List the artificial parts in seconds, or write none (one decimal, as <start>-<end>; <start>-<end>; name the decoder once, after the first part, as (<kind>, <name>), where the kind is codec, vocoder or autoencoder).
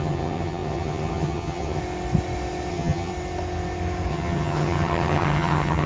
0.0-1.8 (vocoder, HiFi-GAN); 2.7-3.1; 4.1-5.9